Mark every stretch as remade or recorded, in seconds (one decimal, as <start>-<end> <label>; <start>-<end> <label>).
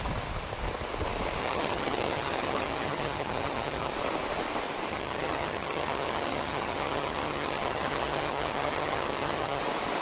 0.0-1.4 recorded; 1.4-3.9 remade; 3.9-4.9 recorded; 4.9-9.6 remade; 9.6-10.0 recorded